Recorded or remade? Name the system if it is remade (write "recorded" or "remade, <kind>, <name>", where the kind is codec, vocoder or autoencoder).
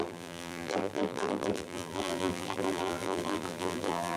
remade, vocoder, BigVGAN v2